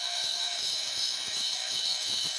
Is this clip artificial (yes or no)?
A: yes